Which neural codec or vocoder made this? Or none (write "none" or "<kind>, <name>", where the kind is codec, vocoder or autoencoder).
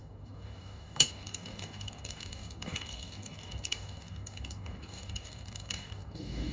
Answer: codec, DAC